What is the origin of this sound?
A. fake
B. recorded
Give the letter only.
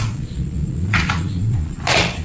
A